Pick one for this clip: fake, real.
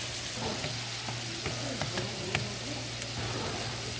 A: real